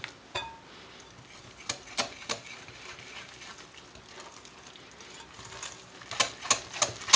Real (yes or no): yes